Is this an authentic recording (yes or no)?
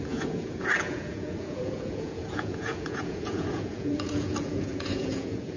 no